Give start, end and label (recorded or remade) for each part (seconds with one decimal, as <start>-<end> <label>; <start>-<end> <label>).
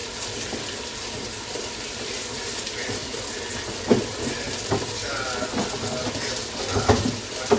0.0-7.6 recorded